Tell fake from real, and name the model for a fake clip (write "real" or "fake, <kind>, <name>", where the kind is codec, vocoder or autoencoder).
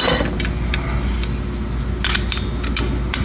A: real